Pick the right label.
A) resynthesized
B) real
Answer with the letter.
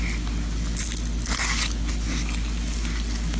B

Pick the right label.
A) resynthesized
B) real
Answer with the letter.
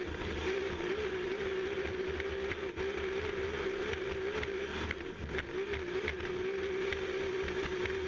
B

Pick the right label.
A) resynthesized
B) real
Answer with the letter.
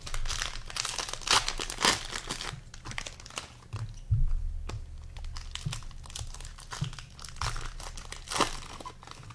B